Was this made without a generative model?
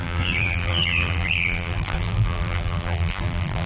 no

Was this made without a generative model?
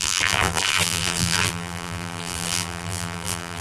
no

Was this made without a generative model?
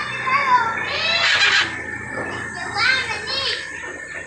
yes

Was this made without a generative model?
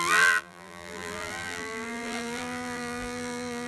no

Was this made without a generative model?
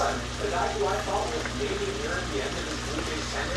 yes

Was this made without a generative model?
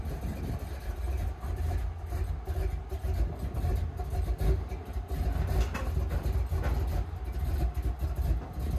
yes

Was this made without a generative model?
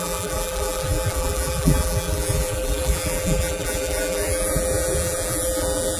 no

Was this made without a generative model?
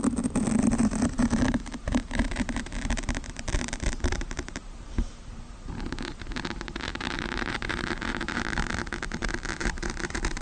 no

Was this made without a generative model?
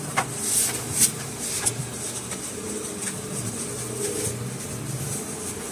no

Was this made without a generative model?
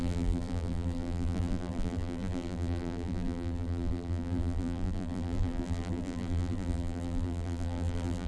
no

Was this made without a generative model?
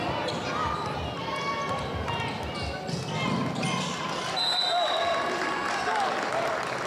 yes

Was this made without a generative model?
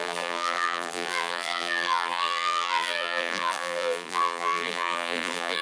no